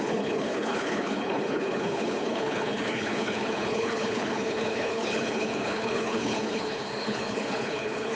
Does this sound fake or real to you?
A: fake